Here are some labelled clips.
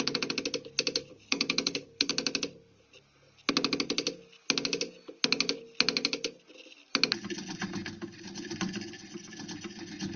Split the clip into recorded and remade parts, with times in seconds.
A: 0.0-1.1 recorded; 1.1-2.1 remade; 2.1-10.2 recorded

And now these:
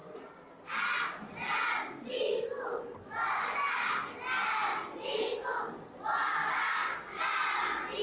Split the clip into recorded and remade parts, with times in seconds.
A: 0.0-6.3 recorded; 6.3-7.2 remade; 7.2-8.0 recorded

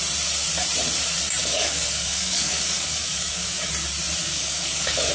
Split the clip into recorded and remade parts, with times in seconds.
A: 0.0-1.4 recorded; 1.4-3.7 remade; 3.7-4.2 recorded; 4.2-5.1 remade